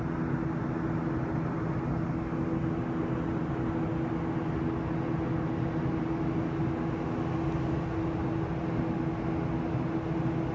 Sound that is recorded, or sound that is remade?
recorded